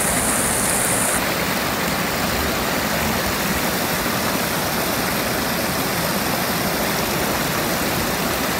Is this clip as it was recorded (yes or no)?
yes